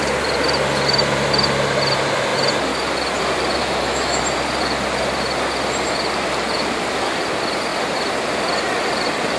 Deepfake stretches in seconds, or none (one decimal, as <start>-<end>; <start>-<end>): 3.6-4.2